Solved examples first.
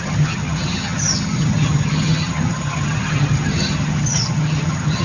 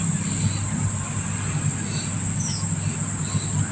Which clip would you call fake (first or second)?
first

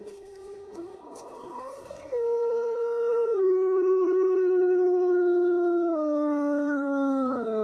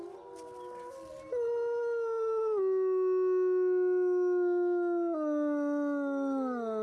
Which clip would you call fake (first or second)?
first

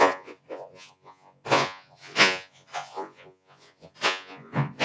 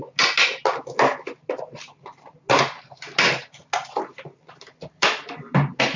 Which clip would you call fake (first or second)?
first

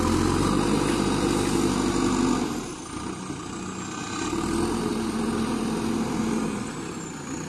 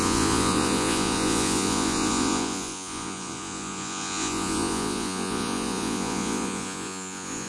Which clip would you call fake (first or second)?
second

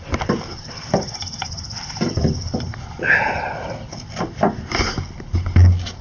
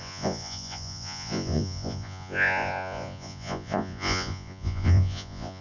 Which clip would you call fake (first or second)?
second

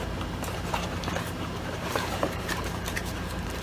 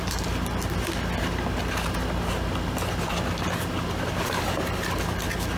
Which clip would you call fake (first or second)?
first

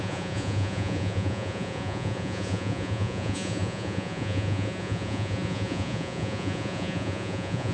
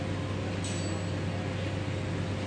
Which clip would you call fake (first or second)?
first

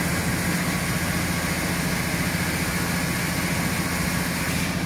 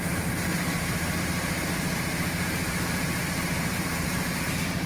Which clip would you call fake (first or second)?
second